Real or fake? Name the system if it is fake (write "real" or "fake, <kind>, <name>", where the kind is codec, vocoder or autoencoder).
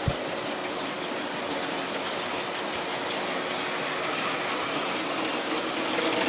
real